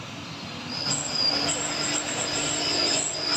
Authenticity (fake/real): real